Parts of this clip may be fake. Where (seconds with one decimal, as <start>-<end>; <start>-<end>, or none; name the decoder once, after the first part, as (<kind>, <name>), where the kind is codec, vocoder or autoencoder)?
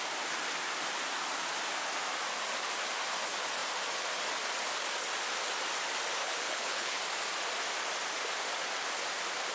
6.2-7.0 (codec, HILCodec)